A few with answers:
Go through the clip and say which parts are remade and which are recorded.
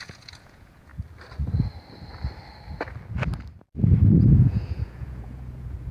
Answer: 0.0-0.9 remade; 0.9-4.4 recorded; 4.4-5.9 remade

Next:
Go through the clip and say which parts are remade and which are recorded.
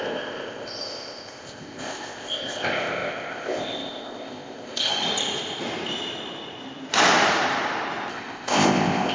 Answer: 0.0-4.9 remade; 4.9-8.1 recorded; 8.1-9.1 remade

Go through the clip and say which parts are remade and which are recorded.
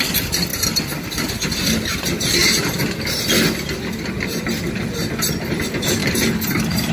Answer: 0.0-6.0 recorded; 6.0-6.9 remade